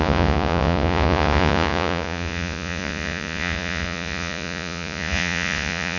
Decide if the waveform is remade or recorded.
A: remade